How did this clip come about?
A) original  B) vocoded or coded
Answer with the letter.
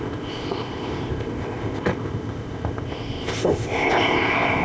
B